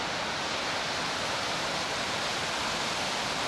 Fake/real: real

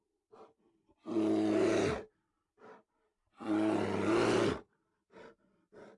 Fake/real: real